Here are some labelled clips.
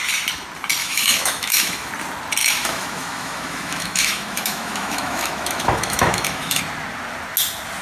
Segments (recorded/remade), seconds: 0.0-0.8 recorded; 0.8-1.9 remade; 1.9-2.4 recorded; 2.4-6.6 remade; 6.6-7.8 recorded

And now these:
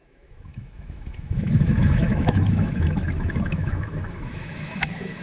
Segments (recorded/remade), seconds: 0.0-5.2 remade

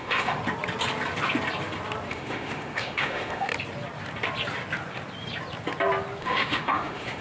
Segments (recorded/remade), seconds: 0.0-0.4 remade; 0.4-2.1 recorded; 2.1-3.5 remade; 3.5-6.2 recorded; 6.2-7.2 remade